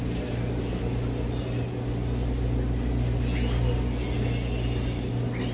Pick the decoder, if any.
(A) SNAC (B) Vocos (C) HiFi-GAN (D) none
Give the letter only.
D